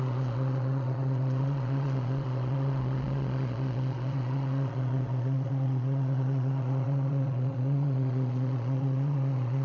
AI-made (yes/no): yes